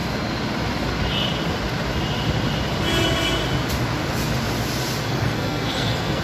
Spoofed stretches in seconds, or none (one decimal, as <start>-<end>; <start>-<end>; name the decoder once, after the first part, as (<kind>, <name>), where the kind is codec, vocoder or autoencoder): 5.0-6.2 (codec, SNAC)